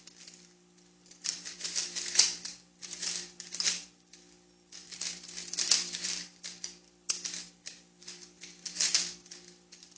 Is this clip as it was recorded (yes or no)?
yes